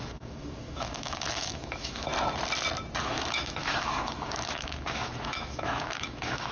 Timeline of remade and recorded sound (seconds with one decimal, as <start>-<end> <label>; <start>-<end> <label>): 0.0-2.1 remade; 2.1-3.0 recorded; 3.0-6.5 remade